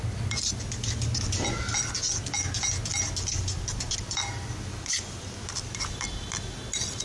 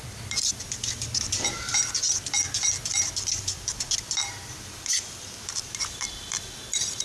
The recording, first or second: first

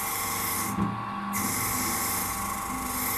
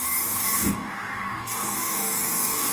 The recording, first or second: first